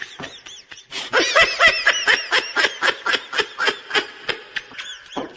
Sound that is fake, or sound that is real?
real